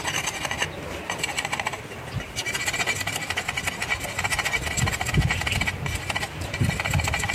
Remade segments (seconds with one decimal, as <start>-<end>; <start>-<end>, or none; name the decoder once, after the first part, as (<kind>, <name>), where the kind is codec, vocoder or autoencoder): 1.7-2.4 (vocoder, BigVGAN v2)